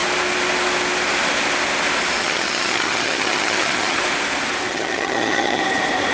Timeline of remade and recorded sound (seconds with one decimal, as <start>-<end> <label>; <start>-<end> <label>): 0.0-2.2 recorded; 2.2-4.0 remade; 4.0-4.7 recorded; 4.7-5.6 remade; 5.6-6.1 recorded